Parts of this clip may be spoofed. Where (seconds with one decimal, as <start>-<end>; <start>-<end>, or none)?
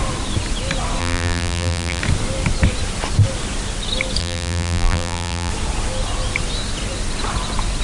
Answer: 1.0-2.0; 4.2-5.5